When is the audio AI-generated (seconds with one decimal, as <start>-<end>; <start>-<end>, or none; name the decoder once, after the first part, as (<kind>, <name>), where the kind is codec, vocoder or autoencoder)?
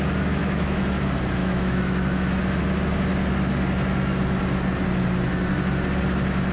0.4-1.0 (autoencoder, DAC-VAE); 1.4-2.4